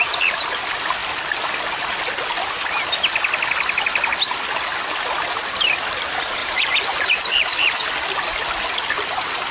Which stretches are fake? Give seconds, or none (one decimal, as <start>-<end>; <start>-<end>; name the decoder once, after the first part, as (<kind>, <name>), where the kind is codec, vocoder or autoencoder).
6.4-7.9 (vocoder, BigVGAN v2)